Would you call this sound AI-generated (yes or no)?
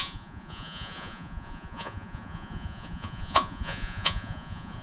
yes